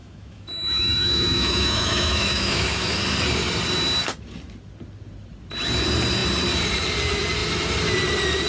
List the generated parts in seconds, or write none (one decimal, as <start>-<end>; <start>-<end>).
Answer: 0.0-3.0